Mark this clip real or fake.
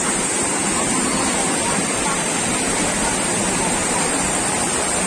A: real